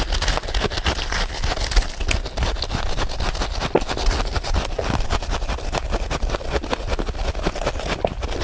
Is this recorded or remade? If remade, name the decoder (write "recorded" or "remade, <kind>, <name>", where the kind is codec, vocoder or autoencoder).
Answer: recorded